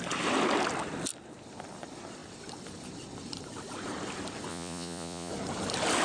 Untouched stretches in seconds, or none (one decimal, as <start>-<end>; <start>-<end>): 0.0-4.5; 5.3-6.0